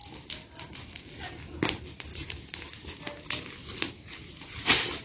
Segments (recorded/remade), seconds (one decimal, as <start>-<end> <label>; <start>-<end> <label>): 0.0-2.1 recorded; 2.1-3.0 remade; 3.0-3.6 recorded; 3.6-5.0 remade